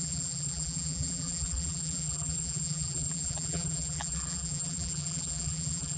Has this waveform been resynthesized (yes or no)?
yes